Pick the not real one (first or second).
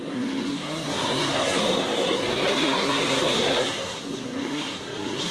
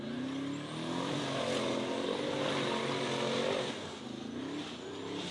first